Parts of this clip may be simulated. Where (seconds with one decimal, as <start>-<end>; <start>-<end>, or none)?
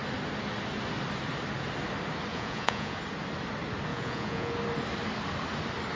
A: 2.3-3.0; 3.9-4.5